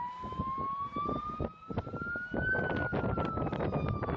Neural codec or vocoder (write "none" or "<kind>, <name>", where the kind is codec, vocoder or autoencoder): none